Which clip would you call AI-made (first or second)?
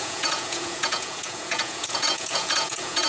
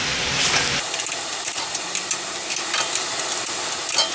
first